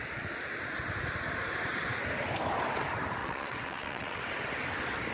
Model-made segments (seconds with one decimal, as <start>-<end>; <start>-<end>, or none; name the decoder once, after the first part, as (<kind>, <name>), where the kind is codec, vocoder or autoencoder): 3.2-4.2 (vocoder, WaveNeXt)